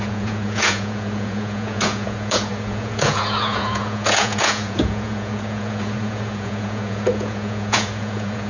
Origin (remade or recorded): remade